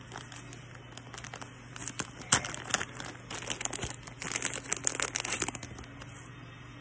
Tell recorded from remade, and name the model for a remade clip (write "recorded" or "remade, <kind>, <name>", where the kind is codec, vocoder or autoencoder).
recorded